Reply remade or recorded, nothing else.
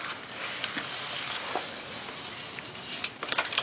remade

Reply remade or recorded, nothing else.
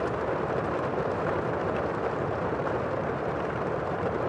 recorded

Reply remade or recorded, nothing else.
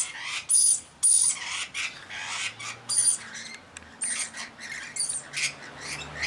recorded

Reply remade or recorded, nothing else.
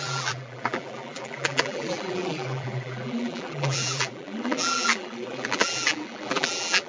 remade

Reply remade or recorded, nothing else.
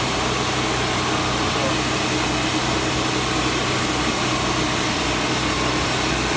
recorded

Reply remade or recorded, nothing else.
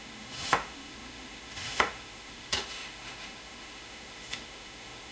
remade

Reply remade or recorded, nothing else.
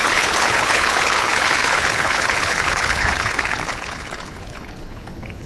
remade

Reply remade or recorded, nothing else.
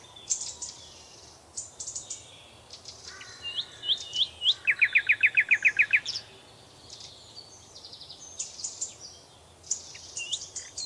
recorded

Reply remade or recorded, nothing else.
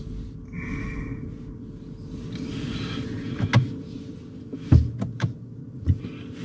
recorded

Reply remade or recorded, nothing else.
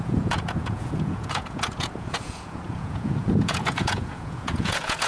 remade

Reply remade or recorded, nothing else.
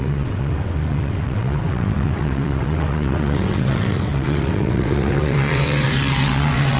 remade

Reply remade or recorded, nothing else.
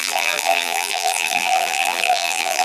remade